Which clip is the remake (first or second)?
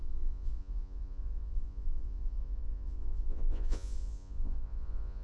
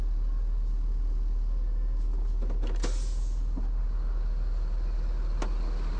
first